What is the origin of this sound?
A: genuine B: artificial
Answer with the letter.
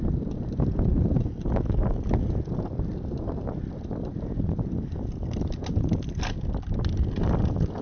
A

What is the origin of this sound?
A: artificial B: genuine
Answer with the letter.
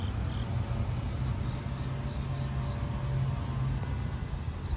B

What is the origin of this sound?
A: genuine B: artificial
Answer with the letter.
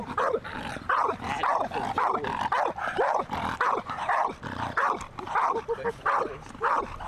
A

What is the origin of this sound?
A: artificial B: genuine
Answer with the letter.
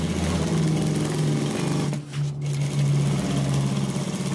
B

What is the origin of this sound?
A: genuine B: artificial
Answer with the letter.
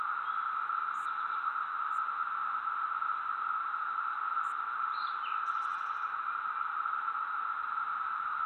A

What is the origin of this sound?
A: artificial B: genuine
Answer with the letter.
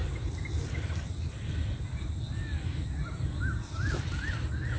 B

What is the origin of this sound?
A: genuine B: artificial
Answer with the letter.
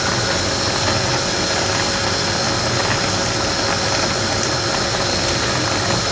A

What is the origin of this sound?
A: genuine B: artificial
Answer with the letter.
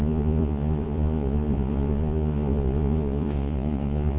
B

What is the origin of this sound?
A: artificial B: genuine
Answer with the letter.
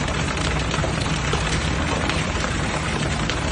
A